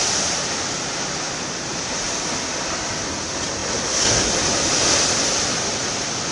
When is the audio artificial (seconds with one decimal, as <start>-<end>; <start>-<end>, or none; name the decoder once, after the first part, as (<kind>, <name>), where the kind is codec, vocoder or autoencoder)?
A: 1.7-2.3 (vocoder, BigVGAN v2)